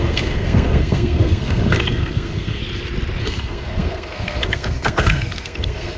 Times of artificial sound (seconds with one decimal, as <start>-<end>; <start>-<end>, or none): 0.0-2.6; 3.2-6.0